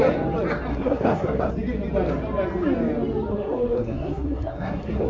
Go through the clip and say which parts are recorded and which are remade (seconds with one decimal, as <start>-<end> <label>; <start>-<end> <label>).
0.0-0.7 recorded; 0.7-1.5 remade; 1.5-3.3 recorded; 3.3-5.1 remade